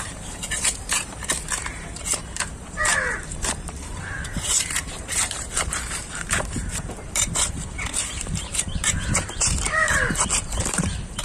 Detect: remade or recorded remade